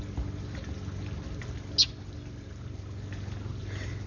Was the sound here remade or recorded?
recorded